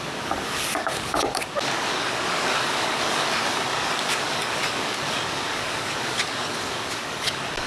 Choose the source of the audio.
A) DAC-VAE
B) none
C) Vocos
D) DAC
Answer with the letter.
D